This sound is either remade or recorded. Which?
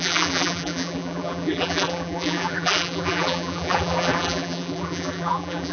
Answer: remade